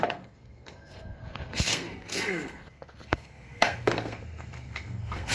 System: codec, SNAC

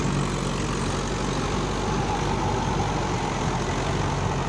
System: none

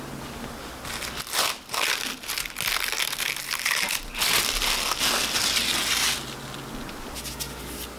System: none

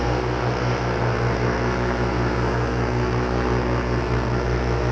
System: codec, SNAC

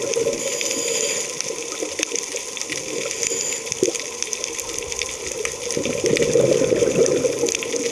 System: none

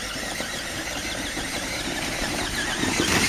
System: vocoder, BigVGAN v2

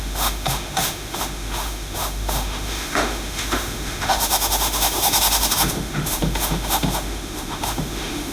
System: autoencoder, DAC-VAE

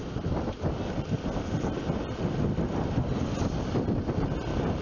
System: none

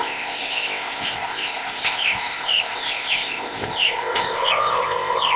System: codec, ZipCodec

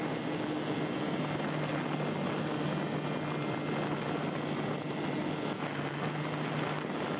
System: none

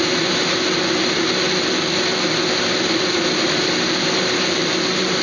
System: none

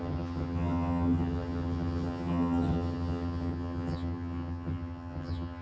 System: vocoder, HiFi-GAN